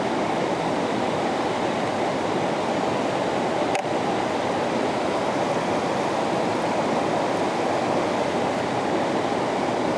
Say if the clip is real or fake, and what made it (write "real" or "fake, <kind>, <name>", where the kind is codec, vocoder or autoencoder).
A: real